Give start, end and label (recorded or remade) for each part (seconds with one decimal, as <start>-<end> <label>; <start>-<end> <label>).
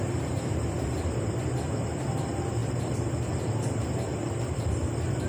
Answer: 0.0-3.8 remade; 3.8-5.3 recorded